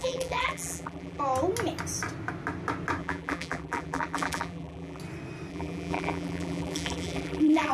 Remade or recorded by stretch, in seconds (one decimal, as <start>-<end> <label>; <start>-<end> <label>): 0.0-1.2 remade; 1.2-3.0 recorded; 3.0-5.0 remade; 5.0-5.5 recorded; 5.5-7.7 remade